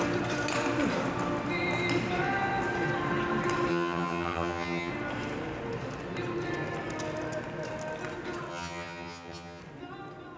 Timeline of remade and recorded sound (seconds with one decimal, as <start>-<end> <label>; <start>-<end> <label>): 0.0-3.7 recorded; 3.7-4.9 remade; 4.9-8.5 recorded; 8.5-9.6 remade; 9.6-10.4 recorded